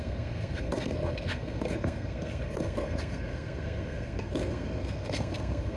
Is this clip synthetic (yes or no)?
yes